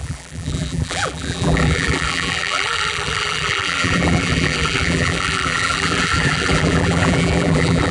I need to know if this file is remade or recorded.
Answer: remade